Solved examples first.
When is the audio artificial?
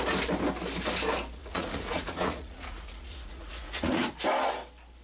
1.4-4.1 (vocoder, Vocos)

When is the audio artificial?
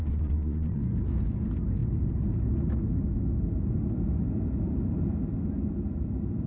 0.0-0.8 (vocoder, Vocos)